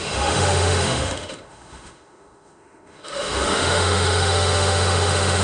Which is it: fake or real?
fake